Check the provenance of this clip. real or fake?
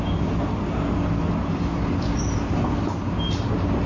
real